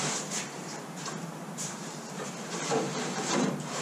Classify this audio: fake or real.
fake